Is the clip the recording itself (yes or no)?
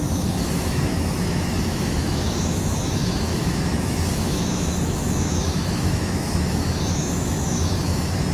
no